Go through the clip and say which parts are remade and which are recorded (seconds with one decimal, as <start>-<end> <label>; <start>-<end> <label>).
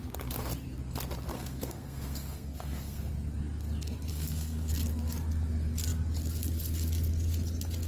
0.0-1.3 recorded; 1.3-3.1 remade; 3.1-4.1 recorded; 4.1-4.7 remade; 4.7-7.9 recorded